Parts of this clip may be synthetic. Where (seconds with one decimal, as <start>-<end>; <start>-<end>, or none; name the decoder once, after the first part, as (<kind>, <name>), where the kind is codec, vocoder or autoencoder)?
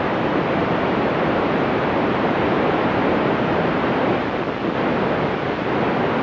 0.6-3.7 (vocoder, BigVGAN v2)